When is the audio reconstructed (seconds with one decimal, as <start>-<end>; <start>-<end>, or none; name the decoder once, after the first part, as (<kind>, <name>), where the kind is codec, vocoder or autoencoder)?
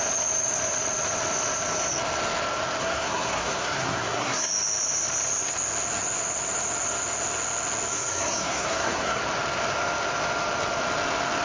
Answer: 2.8-4.5 (codec, SNAC); 7.9-9.2